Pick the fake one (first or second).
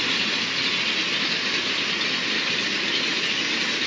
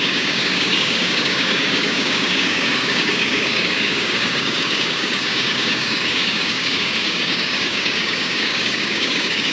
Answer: second